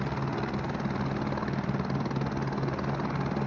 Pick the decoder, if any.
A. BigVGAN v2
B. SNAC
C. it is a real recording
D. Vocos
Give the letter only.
C